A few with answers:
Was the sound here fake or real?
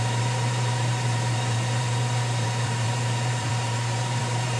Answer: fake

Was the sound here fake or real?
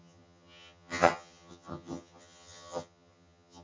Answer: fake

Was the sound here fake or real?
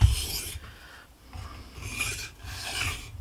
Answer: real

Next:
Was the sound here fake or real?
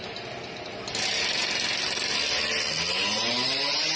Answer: real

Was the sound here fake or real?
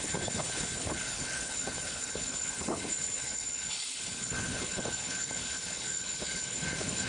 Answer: fake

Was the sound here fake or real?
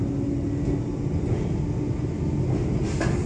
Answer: real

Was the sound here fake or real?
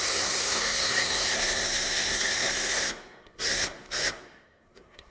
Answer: fake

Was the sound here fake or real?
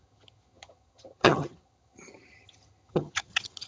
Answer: fake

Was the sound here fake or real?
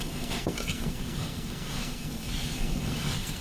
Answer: fake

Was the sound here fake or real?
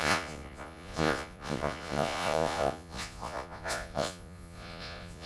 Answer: fake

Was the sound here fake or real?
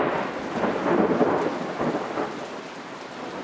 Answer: real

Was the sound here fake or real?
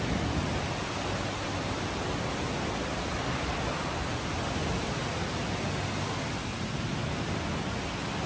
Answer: real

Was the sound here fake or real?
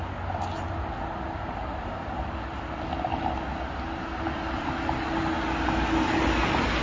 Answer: real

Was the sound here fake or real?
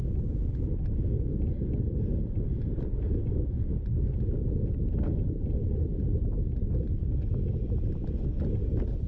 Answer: real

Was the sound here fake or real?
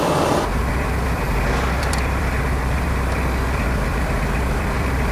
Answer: fake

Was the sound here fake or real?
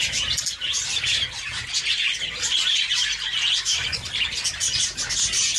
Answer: real